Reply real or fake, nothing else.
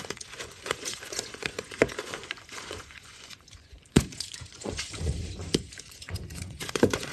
fake